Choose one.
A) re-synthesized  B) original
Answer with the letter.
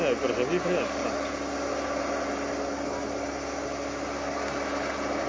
B